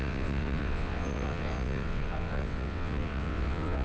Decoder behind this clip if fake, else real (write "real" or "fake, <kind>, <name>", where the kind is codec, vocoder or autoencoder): fake, vocoder, WaveNeXt